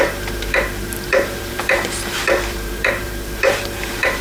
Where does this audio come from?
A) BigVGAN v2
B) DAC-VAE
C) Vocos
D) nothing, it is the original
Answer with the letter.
A